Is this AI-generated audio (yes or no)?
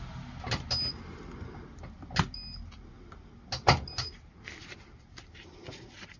no